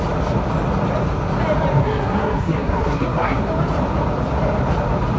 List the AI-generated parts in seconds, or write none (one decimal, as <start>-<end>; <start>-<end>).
1.8-3.4